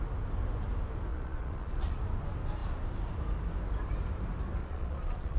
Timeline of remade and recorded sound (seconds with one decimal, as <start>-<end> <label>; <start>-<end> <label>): 0.0-1.1 recorded; 1.1-2.0 remade; 2.0-4.6 recorded; 4.6-5.4 remade